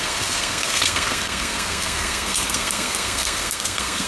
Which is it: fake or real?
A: fake